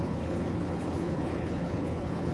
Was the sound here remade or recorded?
remade